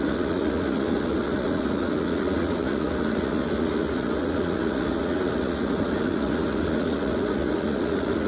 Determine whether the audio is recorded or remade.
remade